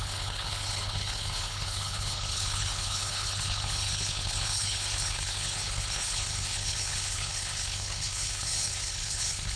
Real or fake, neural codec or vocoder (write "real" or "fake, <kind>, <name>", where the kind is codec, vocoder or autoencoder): fake, codec, HILCodec